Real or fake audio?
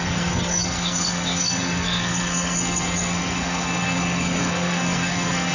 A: fake